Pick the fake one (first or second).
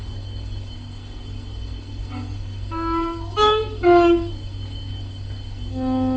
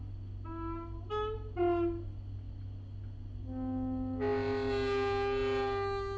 first